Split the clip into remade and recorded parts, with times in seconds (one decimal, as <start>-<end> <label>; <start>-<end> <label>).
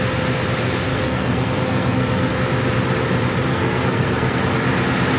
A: 0.0-0.9 recorded; 0.9-2.3 remade; 2.3-3.5 recorded; 3.5-4.4 remade; 4.4-5.2 recorded